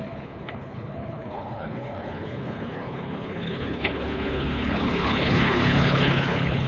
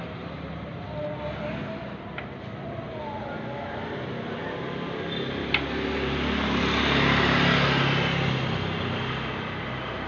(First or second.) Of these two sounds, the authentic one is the second